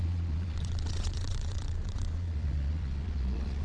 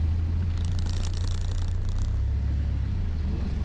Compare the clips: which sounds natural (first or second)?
second